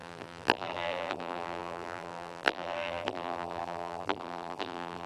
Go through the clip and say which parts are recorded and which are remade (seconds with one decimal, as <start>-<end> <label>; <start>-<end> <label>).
0.0-5.1 remade